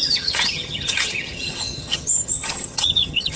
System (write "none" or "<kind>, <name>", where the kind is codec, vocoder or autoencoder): vocoder, HiFi-GAN